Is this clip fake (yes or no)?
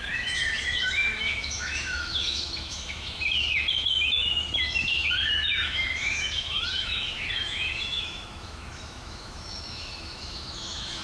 yes